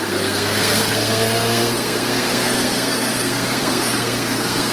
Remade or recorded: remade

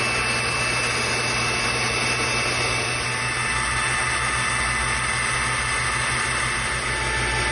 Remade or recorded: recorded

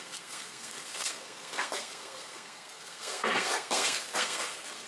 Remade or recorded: remade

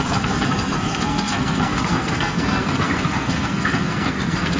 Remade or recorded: remade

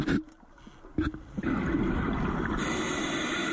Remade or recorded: recorded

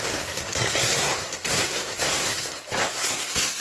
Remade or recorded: remade